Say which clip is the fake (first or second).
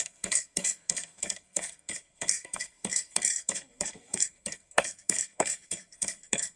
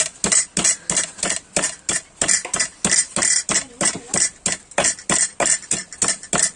first